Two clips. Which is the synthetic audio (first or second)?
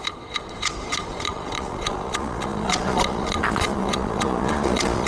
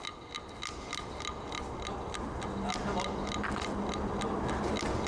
first